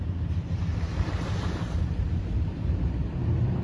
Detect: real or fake fake